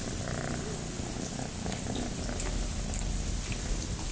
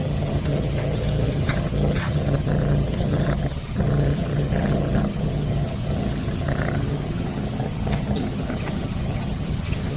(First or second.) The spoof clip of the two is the second